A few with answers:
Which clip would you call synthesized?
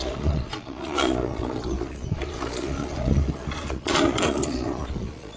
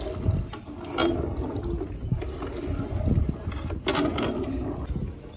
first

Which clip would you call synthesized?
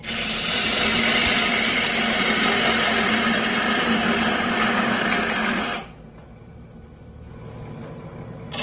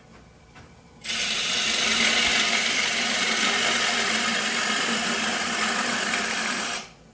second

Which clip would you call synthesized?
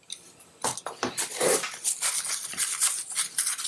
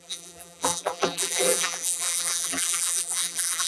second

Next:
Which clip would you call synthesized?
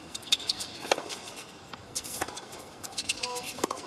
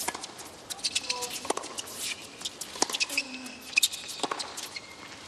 first